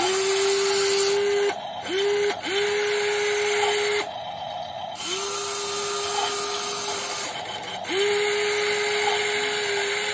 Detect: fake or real real